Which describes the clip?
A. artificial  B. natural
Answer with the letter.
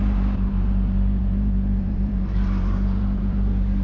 A